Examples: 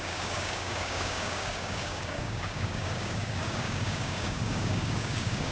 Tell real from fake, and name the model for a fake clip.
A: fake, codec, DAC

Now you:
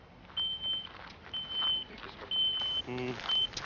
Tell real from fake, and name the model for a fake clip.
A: real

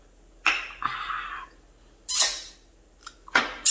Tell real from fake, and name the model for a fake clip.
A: real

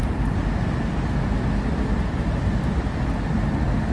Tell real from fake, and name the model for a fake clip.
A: real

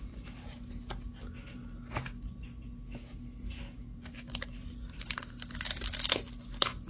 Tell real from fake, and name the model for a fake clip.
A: real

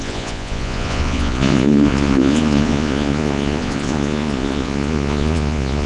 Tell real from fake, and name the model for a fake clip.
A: fake, vocoder, Vocos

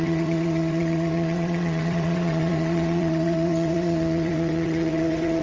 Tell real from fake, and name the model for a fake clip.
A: fake, vocoder, WaveNeXt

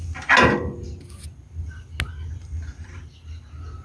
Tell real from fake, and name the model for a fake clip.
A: real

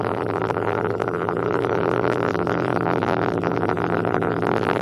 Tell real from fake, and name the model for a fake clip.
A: fake, vocoder, BigVGAN v2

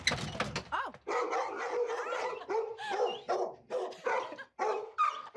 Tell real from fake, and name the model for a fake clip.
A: real